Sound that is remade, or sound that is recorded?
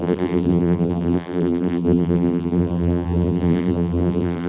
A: remade